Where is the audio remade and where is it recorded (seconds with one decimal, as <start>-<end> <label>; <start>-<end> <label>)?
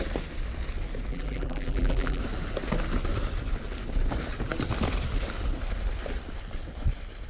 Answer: 0.0-1.1 recorded; 1.1-2.2 remade; 2.2-7.3 recorded